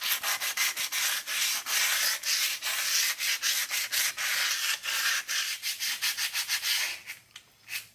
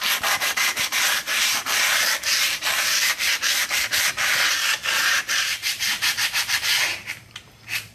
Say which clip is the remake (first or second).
second